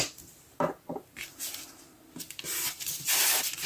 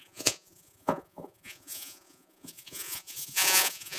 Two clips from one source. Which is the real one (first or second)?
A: first